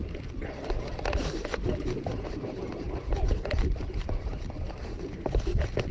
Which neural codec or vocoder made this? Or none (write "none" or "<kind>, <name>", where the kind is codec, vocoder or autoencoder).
vocoder, BigVGAN v2